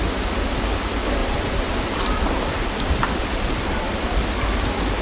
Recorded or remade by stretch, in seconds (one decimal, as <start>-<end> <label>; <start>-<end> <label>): 0.0-1.2 recorded; 1.2-4.2 remade; 4.2-5.0 recorded